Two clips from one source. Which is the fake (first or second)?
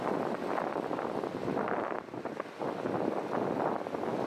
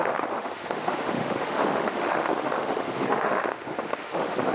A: second